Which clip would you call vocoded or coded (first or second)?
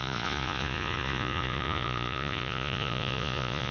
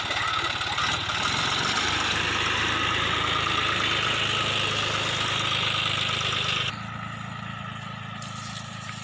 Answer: first